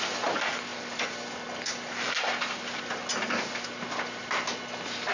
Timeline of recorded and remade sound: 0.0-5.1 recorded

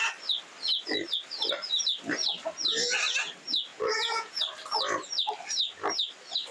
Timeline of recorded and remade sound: 0.0-3.7 recorded; 3.7-4.4 remade; 4.4-6.5 recorded